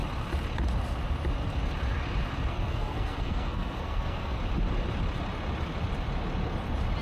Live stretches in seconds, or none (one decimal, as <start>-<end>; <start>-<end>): 0.0-2.5; 4.4-7.0